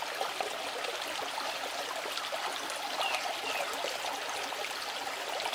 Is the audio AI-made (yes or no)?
no